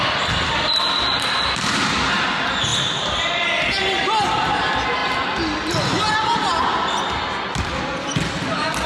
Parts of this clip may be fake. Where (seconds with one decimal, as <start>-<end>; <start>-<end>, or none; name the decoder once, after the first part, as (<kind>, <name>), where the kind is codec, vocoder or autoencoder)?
none